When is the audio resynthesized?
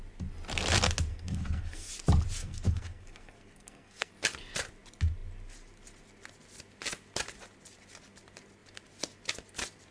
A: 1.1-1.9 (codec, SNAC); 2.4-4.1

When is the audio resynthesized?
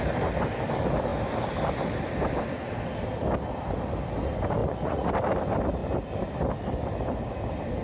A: 4.6-5.1 (vocoder, Vocos)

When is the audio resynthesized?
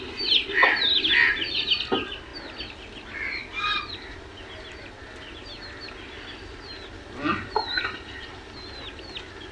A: none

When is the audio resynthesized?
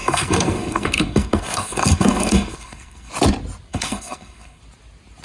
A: 0.0-3.1 (codec, SNAC); 3.7-4.6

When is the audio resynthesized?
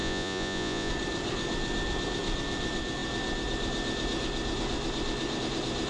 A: 0.0-0.9 (vocoder, Vocos)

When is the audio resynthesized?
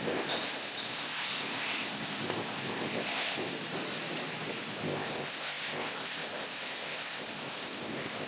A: 0.0-3.5 (codec, ZipCodec); 4.6-8.3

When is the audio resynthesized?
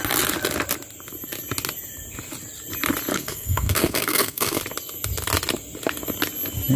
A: 3.1-4.6 (codec, SNAC)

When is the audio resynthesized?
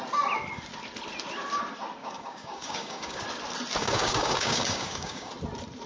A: 2.0-3.2 (codec, DAC); 3.8-5.3